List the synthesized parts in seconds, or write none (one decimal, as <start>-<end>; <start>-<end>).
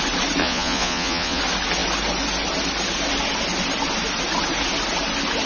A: 0.4-1.4